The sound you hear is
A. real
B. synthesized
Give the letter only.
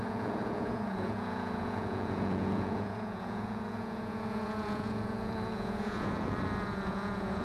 B